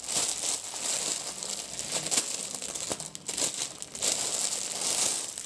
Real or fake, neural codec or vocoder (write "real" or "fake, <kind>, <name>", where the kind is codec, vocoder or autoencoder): real